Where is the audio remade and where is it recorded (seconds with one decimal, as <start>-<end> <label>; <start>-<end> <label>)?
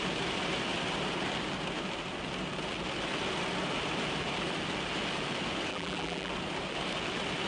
0.0-5.7 recorded; 5.7-6.3 remade; 6.3-7.5 recorded